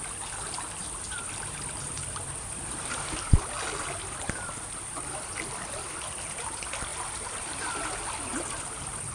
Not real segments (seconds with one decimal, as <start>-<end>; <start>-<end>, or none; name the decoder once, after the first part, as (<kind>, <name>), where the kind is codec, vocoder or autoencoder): 6.9-7.7 (vocoder, BigVGAN v2)

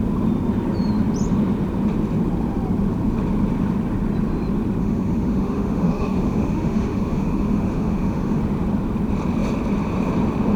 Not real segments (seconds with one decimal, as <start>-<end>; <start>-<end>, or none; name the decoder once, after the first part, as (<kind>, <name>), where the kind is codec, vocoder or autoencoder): 4.8-8.4 (autoencoder, DAC-VAE)

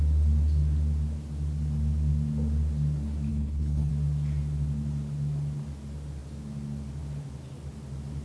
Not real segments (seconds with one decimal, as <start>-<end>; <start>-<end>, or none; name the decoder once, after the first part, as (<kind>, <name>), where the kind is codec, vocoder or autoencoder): 3.3-3.9 (codec, HILCodec)

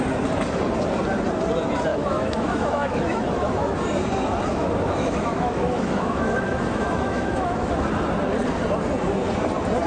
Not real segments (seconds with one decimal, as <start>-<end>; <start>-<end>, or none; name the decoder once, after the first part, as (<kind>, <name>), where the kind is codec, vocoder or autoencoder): 1.9-3.7 (autoencoder, DAC-VAE); 4.5-7.9

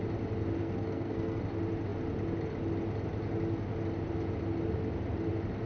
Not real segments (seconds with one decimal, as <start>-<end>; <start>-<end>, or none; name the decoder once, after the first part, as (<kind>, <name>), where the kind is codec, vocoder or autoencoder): 0.6-1.4 (codec, SNAC)